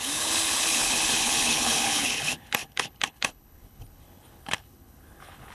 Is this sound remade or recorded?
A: remade